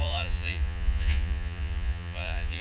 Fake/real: fake